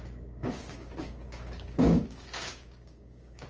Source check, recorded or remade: remade